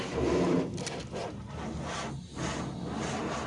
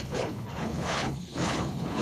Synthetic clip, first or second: second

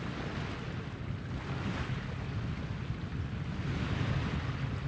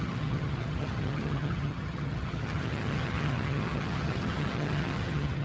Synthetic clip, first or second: second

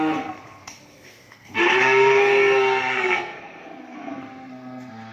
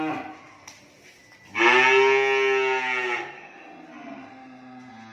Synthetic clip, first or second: first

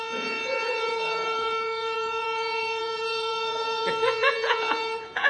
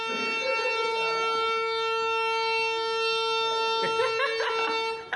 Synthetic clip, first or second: first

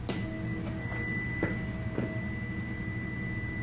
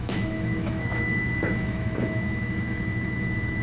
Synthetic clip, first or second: second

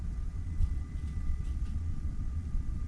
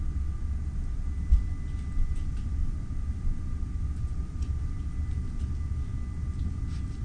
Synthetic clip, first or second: first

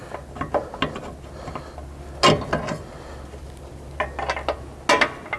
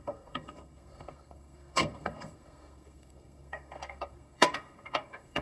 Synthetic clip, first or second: second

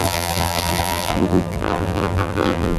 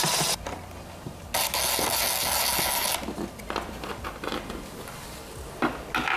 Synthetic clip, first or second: first